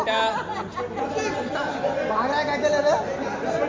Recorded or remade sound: recorded